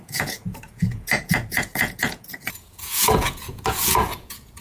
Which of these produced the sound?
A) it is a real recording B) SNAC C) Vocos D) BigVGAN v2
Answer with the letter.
C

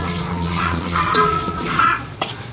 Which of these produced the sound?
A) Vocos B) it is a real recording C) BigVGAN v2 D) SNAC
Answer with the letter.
A